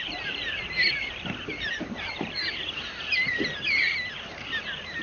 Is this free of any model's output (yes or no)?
no